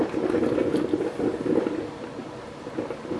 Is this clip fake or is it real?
real